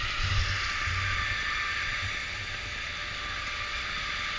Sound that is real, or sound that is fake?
real